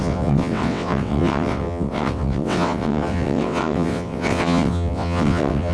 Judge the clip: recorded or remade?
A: remade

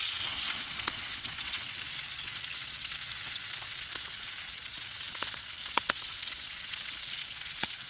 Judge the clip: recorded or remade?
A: remade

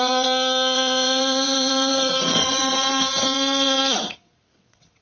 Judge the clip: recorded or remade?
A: remade